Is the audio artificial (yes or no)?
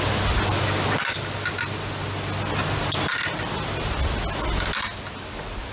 no